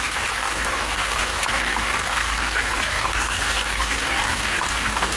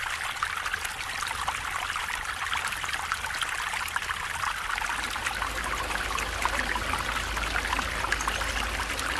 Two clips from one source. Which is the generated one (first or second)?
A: first